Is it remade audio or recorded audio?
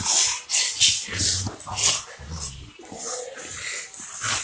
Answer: recorded